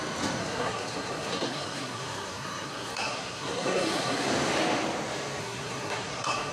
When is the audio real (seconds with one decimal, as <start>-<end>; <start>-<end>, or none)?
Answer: 0.0-0.4; 4.3-5.4